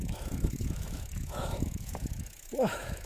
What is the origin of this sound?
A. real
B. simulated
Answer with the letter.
B